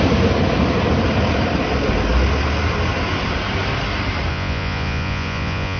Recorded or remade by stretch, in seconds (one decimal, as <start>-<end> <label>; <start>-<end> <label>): 0.0-4.3 recorded; 4.3-5.8 remade

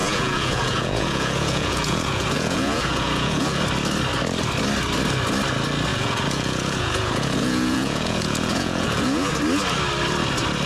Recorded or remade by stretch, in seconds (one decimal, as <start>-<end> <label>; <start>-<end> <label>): 0.0-3.6 remade; 3.6-5.9 recorded; 5.9-9.3 remade; 9.3-10.7 recorded

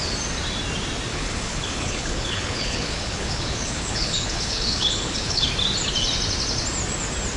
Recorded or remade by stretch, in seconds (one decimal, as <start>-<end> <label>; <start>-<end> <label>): 0.0-1.1 recorded; 1.1-5.5 remade; 5.5-7.4 recorded

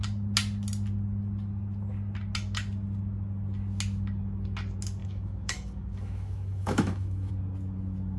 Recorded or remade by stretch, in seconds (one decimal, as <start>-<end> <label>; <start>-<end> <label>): 0.0-5.0 recorded; 5.0-7.3 remade; 7.3-8.2 recorded